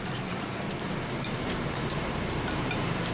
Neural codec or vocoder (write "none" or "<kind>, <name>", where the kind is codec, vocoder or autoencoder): vocoder, BigVGAN v2